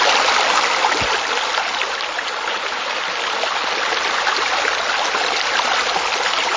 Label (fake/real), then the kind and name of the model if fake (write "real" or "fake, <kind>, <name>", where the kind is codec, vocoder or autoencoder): real